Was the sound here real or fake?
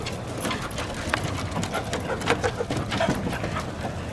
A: real